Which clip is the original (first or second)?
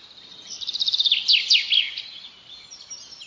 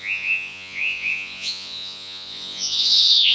first